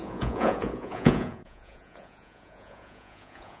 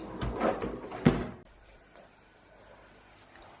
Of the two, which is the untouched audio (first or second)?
second